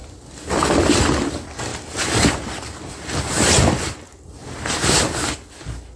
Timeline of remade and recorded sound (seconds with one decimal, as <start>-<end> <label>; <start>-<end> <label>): 0.0-1.0 remade; 1.0-4.4 recorded; 4.4-4.9 remade; 4.9-6.0 recorded